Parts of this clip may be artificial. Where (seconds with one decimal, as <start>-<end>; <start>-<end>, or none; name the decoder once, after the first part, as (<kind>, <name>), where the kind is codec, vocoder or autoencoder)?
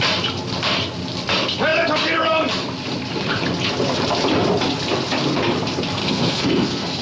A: 6.0-7.0 (codec, SNAC)